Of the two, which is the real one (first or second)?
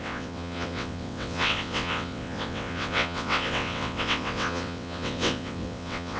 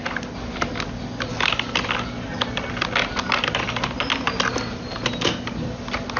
second